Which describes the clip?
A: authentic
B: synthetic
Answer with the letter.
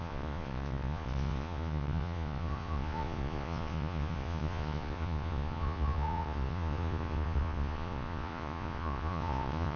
B